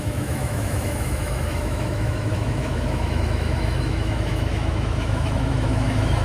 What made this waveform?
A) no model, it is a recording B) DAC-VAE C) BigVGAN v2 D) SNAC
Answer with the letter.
B